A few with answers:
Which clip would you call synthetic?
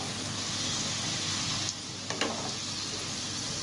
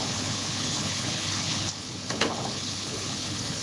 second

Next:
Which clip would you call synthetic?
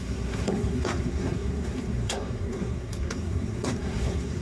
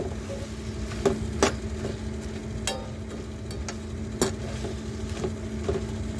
first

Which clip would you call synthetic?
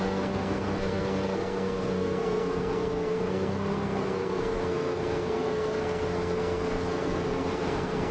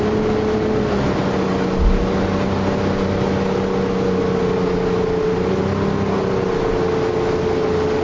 first